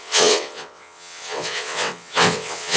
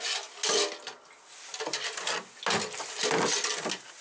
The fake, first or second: first